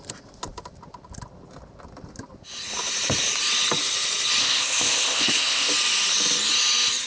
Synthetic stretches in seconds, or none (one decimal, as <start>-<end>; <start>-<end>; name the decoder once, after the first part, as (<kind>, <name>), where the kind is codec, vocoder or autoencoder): 4.4-5.7 (codec, ZipCodec)